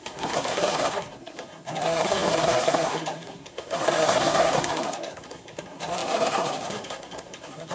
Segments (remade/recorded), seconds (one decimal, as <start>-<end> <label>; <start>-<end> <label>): 0.0-7.7 remade

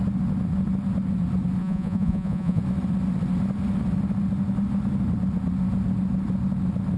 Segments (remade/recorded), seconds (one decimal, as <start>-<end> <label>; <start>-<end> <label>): 0.0-1.6 recorded; 1.6-2.6 remade; 2.6-7.0 recorded

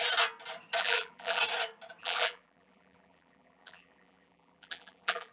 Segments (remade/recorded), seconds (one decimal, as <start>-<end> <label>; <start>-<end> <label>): 0.0-0.8 recorded; 0.8-1.4 remade; 1.4-2.0 recorded; 2.0-5.3 remade

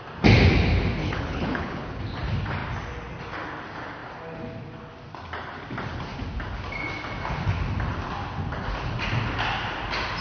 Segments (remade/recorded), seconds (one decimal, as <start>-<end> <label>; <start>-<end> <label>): 0.0-1.0 recorded; 1.0-2.0 remade; 2.0-10.2 recorded